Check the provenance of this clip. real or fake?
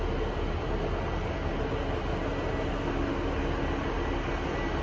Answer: real